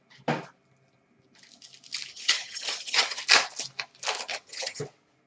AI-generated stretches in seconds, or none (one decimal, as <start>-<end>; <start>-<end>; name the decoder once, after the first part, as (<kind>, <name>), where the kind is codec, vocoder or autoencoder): 2.1-3.2 (vocoder, HiFi-GAN); 4.3-4.8